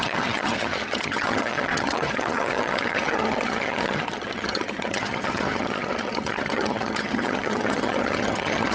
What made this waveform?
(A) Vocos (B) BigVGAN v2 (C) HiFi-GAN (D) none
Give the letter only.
C